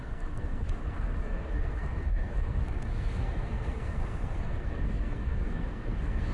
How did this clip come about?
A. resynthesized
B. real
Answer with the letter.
A